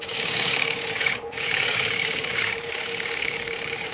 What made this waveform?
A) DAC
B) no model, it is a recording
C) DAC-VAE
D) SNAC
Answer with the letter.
A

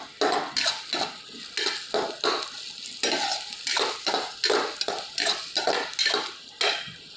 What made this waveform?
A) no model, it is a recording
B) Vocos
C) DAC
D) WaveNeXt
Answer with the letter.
A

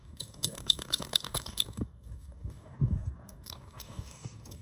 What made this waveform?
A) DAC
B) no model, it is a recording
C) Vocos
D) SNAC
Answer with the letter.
A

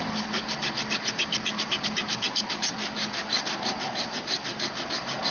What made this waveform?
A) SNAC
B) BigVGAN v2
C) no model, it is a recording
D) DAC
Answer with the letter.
C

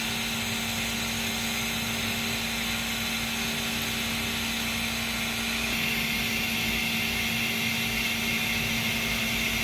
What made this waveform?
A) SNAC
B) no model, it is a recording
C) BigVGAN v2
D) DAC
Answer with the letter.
B